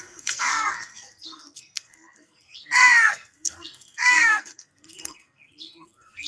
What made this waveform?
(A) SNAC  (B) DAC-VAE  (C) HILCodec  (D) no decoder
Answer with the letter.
A